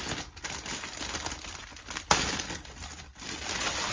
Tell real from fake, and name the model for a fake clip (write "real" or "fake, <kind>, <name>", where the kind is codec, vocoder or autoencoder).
real